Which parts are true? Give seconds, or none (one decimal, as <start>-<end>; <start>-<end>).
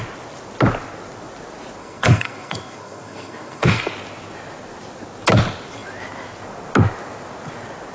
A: 0.0-1.8; 3.9-7.9